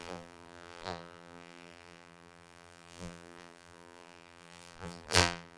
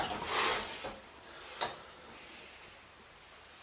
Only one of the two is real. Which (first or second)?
second